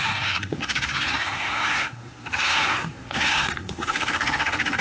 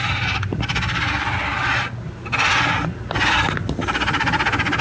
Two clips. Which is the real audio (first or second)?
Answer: second